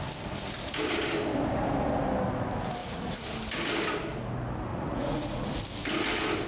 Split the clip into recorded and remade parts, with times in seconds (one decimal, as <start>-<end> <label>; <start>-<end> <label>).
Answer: 0.0-2.8 recorded; 2.8-3.3 remade; 3.3-4.7 recorded; 4.7-5.5 remade; 5.5-6.5 recorded